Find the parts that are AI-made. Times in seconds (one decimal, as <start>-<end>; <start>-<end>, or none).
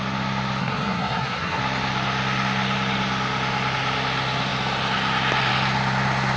0.6-1.6